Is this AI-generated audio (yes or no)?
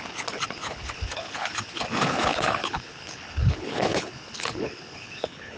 yes